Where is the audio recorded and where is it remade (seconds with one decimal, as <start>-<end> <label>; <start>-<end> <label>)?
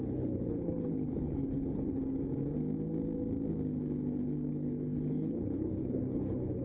0.0-2.0 remade; 2.0-4.5 recorded; 4.5-6.6 remade